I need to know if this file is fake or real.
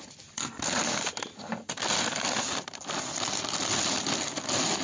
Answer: real